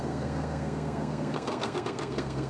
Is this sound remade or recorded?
remade